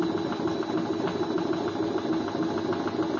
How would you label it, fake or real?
real